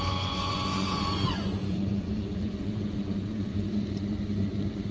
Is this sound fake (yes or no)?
yes